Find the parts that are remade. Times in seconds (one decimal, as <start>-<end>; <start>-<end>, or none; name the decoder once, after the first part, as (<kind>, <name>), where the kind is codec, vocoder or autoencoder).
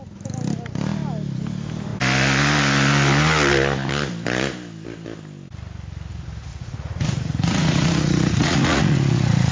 6.5-9.5 (vocoder, Vocos)